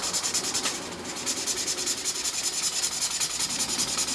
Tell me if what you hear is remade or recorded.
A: recorded